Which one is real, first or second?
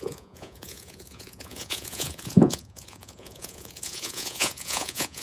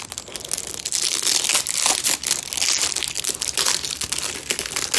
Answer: second